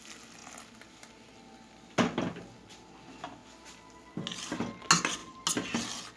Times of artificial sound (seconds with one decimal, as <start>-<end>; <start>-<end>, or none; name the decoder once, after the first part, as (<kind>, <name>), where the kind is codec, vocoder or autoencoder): none